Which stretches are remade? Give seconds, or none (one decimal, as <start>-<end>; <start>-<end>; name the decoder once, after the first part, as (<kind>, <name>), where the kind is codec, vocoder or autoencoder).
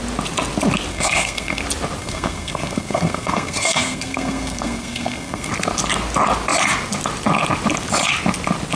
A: 0.9-1.6 (codec, SNAC); 2.0-5.5